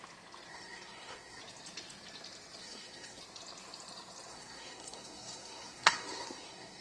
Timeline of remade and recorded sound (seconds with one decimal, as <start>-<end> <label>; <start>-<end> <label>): 0.0-0.5 recorded; 0.5-1.4 remade; 1.4-2.6 recorded; 2.6-3.2 remade; 3.2-4.3 recorded; 4.3-6.8 remade

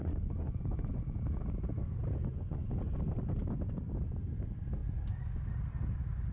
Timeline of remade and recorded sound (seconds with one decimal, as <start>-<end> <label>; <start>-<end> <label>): 0.0-1.4 remade; 1.4-2.2 recorded; 2.2-2.7 remade; 2.7-4.8 recorded; 4.8-5.4 remade; 5.4-6.3 recorded

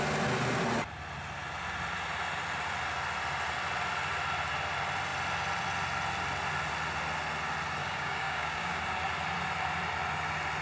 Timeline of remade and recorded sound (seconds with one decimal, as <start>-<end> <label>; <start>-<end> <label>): 0.0-7.8 recorded; 7.8-8.8 remade; 8.8-10.6 recorded